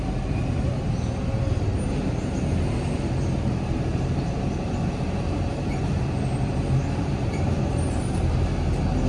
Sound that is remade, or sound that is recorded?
remade